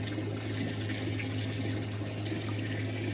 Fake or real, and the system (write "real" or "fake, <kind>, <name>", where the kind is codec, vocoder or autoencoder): real